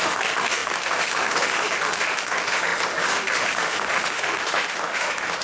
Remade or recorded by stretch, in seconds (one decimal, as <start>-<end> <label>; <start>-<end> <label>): 0.0-5.4 remade